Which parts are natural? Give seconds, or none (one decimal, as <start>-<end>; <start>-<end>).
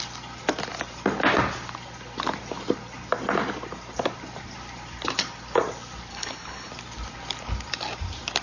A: 0.0-6.1; 6.7-8.4